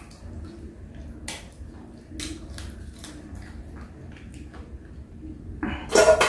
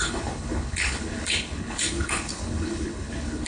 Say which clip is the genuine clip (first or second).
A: first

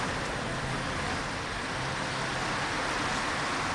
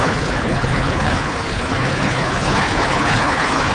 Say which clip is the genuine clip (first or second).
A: first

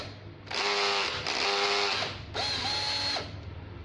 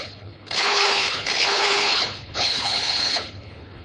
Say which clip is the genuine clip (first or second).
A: first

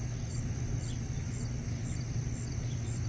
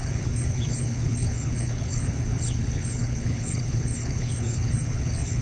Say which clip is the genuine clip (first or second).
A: first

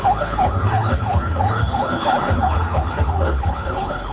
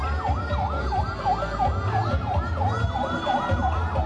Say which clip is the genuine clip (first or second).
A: second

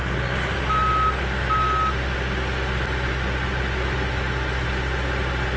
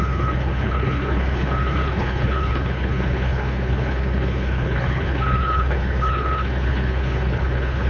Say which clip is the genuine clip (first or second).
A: first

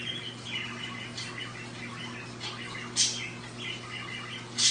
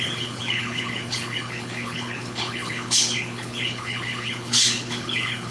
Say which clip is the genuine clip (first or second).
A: first